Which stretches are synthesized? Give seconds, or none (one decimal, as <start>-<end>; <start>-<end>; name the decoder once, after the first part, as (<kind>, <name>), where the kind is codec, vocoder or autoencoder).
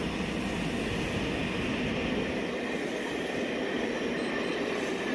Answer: none